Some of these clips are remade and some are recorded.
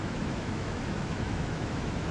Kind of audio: remade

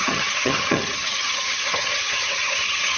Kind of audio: remade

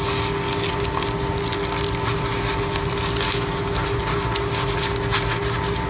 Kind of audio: recorded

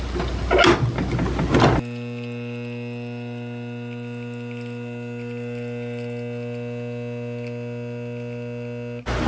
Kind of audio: recorded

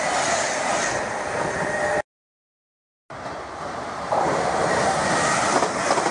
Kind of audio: recorded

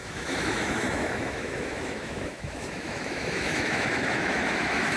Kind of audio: remade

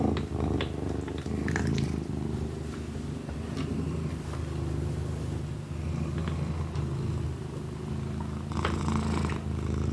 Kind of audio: recorded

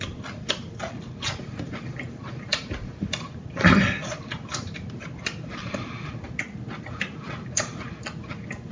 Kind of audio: recorded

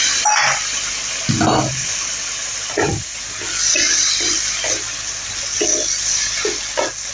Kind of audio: recorded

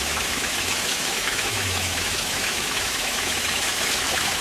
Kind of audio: remade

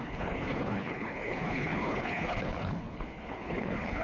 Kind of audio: remade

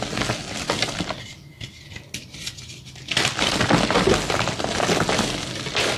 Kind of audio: recorded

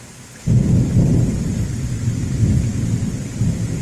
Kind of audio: recorded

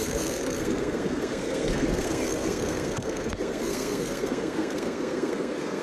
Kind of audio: remade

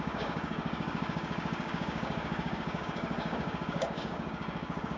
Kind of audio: remade